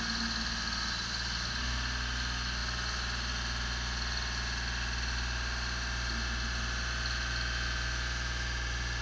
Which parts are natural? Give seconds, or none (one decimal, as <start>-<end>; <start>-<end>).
0.0-9.0